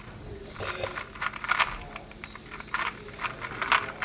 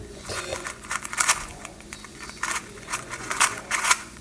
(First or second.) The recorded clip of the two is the first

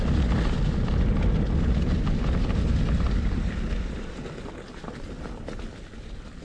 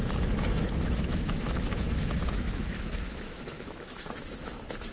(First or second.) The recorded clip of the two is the first